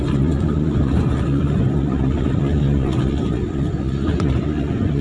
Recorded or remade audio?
remade